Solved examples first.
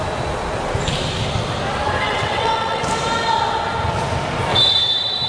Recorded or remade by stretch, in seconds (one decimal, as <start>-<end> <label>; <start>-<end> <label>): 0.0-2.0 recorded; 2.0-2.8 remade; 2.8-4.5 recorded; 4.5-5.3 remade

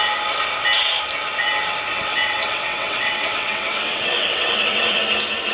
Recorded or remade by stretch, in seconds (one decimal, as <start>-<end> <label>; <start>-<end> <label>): 0.0-1.9 recorded; 1.9-5.0 remade; 5.0-5.5 recorded

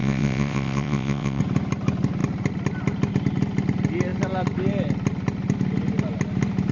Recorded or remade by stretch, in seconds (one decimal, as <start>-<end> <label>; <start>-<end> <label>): 0.0-1.4 remade; 1.4-6.7 recorded

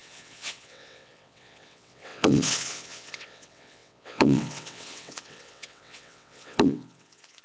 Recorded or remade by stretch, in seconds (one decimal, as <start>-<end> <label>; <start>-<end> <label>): 0.0-7.4 remade

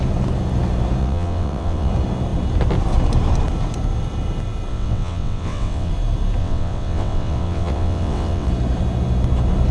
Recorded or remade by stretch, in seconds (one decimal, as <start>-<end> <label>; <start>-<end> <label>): 0.0-1.0 recorded; 1.0-1.9 remade; 1.9-4.7 recorded; 4.7-5.9 remade; 5.9-6.4 recorded; 6.4-8.5 remade; 8.5-9.7 recorded

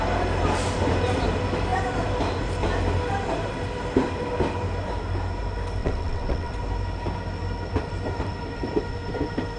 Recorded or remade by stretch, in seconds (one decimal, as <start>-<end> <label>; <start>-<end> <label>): 0.0-5.8 recorded; 5.8-6.5 remade; 6.5-9.6 recorded